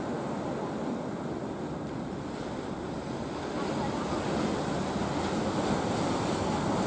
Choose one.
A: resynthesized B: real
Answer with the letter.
B